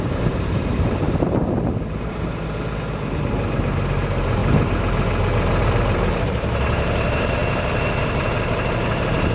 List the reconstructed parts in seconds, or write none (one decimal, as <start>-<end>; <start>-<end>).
0.0-1.4; 3.6-4.4; 5.6-9.3